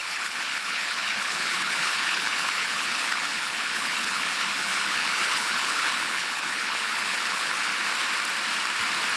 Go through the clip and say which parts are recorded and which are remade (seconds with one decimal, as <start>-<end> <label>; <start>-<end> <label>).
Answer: 0.0-7.7 remade; 7.7-9.2 recorded